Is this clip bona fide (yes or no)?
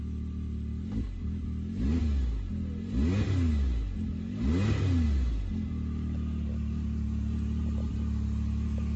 yes